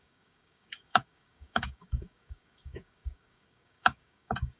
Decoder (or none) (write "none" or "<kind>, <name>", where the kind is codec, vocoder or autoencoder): codec, DAC